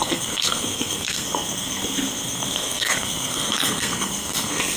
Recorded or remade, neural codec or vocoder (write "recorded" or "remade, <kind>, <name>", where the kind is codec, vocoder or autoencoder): remade, codec, SNAC